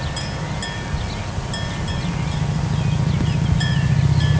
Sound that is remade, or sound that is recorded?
recorded